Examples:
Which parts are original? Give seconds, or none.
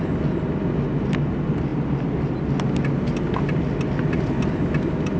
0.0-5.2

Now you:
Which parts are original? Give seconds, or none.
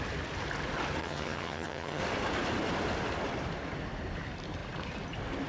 0.0-1.0; 2.0-5.5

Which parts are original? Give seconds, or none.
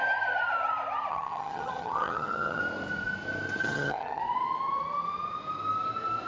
0.0-1.1; 2.6-3.6; 4.2-6.3